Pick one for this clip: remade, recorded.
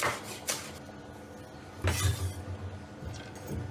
recorded